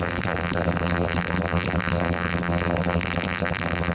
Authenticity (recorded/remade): remade